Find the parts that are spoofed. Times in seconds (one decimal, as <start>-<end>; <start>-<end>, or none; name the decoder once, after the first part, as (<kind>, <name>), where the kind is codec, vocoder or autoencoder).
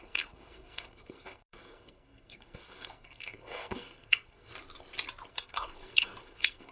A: 0.0-4.5 (codec, SNAC); 5.3-6.7